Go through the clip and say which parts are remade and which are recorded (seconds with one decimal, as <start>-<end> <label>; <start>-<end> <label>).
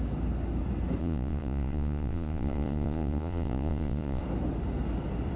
0.0-1.0 recorded; 1.0-4.2 remade; 4.2-5.4 recorded